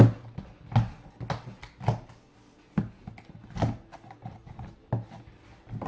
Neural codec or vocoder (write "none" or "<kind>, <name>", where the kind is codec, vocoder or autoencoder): none